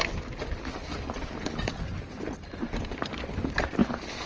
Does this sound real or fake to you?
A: real